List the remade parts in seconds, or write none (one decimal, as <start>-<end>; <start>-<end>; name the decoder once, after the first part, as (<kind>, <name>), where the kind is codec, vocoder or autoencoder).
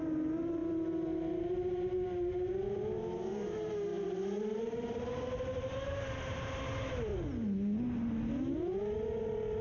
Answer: 0.0-0.6 (vocoder, BigVGAN v2); 1.3-7.1; 8.3-9.6